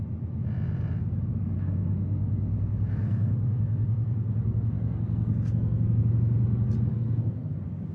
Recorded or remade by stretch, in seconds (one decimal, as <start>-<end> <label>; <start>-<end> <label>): 0.0-1.3 recorded; 1.3-6.0 remade; 6.0-6.9 recorded; 6.9-7.5 remade; 7.5-7.9 recorded

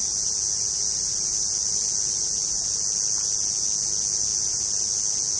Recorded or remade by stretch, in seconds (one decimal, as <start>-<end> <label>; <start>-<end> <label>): 0.0-5.4 recorded

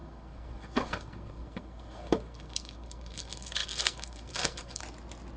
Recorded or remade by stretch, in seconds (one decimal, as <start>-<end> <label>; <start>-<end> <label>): 0.0-4.8 remade; 4.8-5.4 recorded

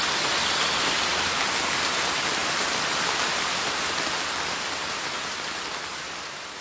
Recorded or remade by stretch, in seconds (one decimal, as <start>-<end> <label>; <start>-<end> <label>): 0.0-6.6 recorded

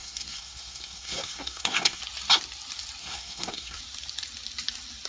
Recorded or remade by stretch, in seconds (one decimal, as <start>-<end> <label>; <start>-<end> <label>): 0.0-2.0 remade; 2.0-3.0 recorded; 3.0-3.8 remade; 3.8-5.1 recorded